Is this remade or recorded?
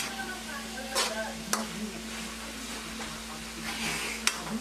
recorded